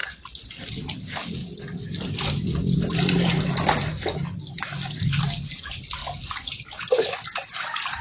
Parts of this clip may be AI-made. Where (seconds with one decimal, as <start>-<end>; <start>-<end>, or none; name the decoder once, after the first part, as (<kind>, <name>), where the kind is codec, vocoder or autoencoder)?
6.0-6.5 (vocoder, BigVGAN v2)